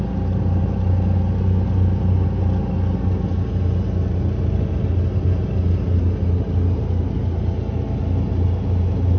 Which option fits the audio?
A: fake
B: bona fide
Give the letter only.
B